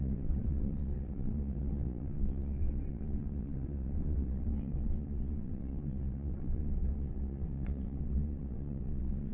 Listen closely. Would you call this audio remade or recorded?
remade